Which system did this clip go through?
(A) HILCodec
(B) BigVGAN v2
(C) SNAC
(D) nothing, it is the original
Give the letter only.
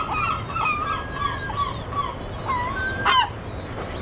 D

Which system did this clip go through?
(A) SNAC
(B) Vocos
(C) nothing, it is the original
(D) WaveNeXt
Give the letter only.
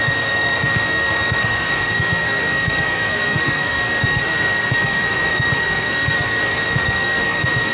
A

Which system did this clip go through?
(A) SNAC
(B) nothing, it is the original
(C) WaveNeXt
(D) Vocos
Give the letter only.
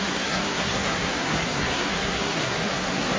A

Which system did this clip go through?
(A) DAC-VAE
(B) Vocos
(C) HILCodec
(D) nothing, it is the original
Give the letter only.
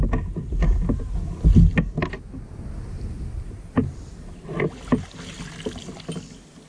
D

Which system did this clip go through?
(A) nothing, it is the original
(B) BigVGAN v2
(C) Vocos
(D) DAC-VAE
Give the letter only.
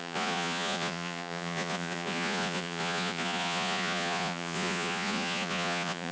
C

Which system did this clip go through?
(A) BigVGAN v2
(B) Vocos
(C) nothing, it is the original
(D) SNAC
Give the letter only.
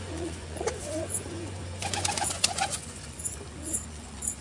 B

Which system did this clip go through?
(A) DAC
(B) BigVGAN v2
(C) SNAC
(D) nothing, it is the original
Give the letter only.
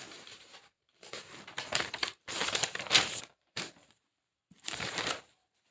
B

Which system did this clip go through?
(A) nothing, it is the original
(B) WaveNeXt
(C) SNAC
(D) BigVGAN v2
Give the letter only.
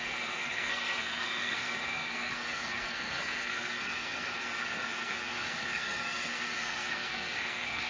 C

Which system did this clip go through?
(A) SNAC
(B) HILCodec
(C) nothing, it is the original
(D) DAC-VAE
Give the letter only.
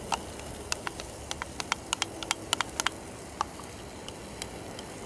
C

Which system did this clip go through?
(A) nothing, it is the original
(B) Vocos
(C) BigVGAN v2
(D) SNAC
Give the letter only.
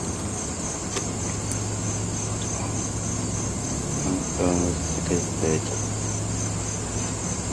A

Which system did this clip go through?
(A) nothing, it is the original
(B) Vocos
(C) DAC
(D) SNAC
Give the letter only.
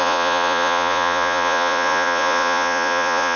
B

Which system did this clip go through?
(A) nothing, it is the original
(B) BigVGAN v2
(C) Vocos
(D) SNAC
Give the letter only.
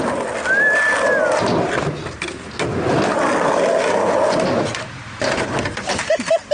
A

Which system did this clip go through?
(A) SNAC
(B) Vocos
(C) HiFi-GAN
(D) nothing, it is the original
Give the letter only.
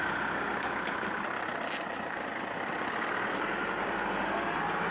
D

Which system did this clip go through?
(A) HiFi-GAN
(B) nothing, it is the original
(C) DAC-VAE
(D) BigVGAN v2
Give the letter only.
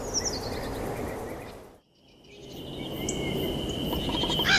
B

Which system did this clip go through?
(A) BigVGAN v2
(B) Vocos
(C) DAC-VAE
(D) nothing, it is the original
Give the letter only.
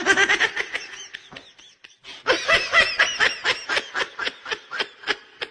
D